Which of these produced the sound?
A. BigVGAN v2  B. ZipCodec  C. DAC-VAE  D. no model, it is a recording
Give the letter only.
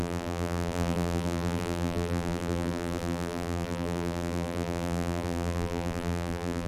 A